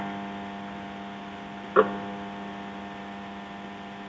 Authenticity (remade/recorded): recorded